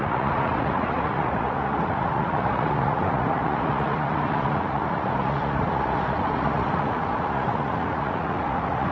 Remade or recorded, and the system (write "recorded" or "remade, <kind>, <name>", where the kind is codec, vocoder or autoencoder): remade, vocoder, Vocos